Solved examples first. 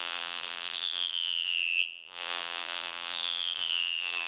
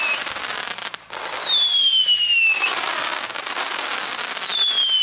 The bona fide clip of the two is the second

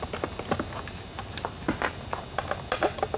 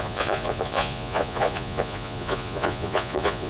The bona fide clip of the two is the first